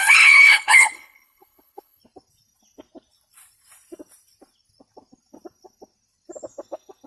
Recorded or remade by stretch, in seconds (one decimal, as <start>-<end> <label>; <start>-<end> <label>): 0.0-2.0 remade; 2.0-7.1 recorded